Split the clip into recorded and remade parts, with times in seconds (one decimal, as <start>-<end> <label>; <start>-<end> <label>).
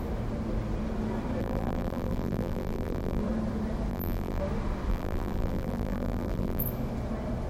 0.0-1.4 recorded; 1.4-3.2 remade; 3.2-3.9 recorded; 3.9-4.4 remade; 4.4-4.9 recorded; 4.9-6.6 remade; 6.6-7.5 recorded